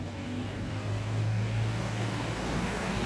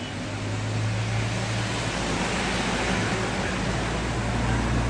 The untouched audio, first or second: second